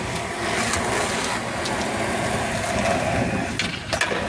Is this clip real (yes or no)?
yes